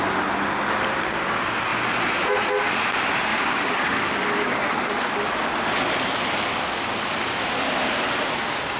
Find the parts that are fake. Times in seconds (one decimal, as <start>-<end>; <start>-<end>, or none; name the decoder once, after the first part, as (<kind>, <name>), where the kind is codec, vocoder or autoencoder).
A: 3.3-4.6 (codec, DAC)